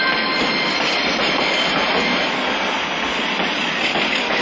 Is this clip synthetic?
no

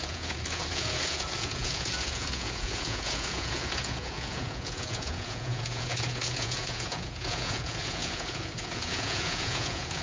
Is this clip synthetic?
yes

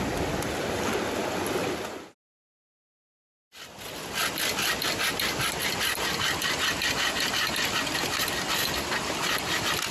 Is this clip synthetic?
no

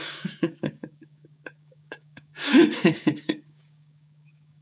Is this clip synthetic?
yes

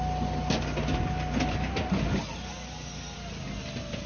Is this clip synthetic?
no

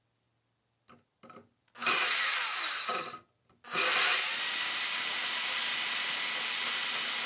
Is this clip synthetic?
no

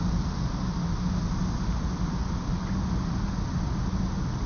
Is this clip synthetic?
no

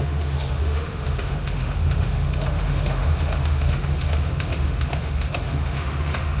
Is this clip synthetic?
yes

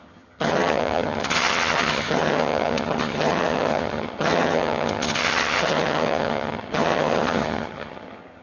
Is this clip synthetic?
yes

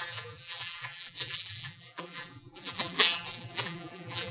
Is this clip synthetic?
yes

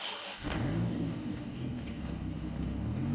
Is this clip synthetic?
yes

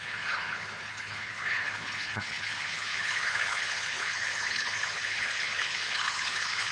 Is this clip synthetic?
yes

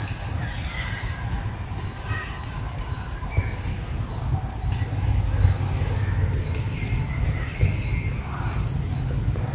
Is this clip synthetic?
no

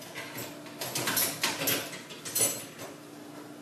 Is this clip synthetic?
no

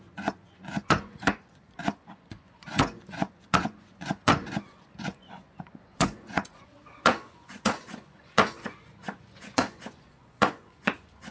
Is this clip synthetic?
yes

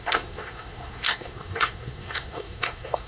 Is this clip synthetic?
yes